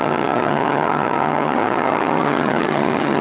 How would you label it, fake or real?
fake